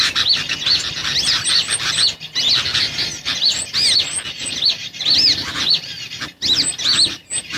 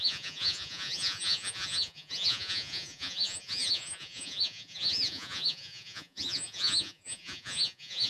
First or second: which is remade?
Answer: second